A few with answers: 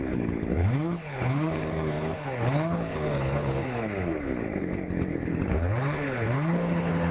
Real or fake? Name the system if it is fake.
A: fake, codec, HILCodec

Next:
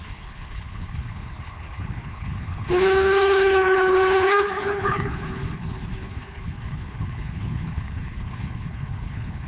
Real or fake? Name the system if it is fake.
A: fake, codec, HILCodec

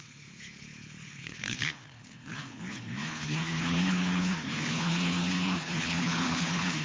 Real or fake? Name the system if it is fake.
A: fake, codec, HILCodec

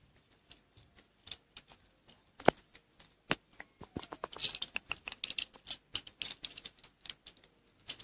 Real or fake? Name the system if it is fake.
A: real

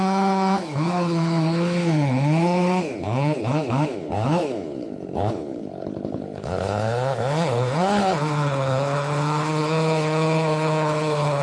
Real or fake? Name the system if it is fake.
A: fake, codec, HILCodec